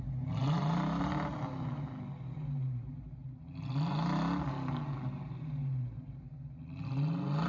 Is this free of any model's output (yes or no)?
yes